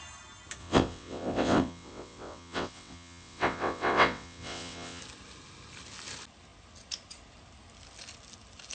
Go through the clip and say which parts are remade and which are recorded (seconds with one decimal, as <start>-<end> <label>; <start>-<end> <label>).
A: 0.0-0.6 recorded; 0.6-5.0 remade; 5.0-8.7 recorded